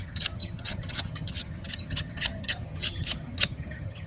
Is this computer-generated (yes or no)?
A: yes